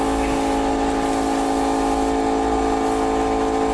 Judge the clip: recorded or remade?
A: recorded